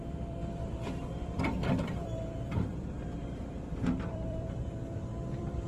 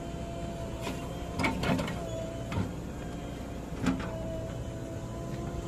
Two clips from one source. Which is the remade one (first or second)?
first